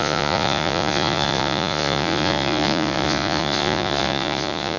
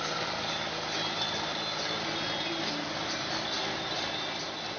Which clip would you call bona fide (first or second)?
second